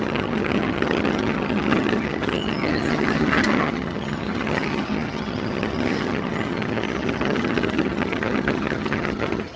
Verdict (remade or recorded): remade